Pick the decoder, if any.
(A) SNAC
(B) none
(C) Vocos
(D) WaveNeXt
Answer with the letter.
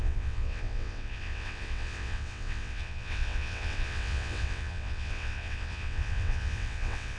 D